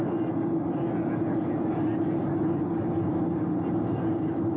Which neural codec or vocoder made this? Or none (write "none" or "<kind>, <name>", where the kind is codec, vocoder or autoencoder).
none